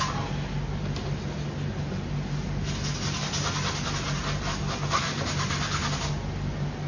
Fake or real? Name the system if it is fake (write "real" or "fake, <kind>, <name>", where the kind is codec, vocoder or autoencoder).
real